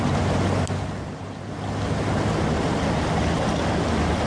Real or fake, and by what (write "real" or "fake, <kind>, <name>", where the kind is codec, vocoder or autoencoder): real